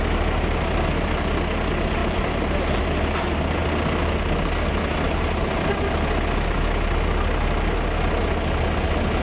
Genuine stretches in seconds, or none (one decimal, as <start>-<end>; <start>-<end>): 0.0-2.0; 2.8-9.2

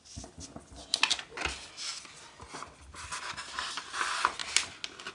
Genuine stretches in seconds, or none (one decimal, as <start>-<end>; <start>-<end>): 0.0-5.1

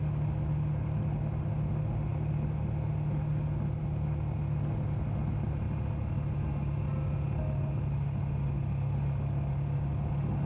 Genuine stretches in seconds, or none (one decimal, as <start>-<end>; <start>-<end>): 0.0-10.5

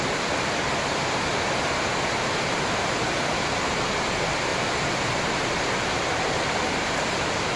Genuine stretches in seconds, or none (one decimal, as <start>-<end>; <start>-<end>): 4.5-6.5

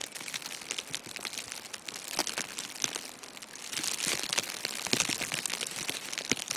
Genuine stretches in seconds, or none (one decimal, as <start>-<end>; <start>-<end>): 0.0-6.6